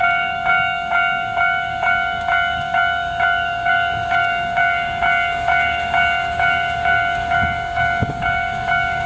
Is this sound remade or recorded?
remade